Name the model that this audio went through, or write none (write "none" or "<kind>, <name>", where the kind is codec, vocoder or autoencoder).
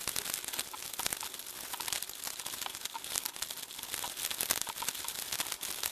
none